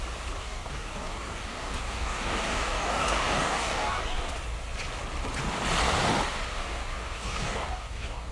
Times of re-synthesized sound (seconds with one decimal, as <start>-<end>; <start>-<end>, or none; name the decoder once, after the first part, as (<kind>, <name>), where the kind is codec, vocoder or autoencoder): 0.4-4.3 (codec, DAC); 6.5-8.3

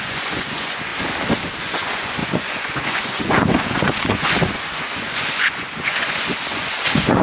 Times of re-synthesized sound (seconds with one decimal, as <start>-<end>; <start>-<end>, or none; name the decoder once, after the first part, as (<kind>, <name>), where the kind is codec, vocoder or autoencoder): 0.0-0.9 (vocoder, Vocos); 1.6-7.2